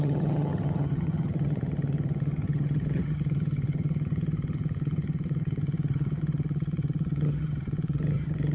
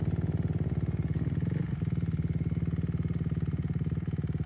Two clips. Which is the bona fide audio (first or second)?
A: second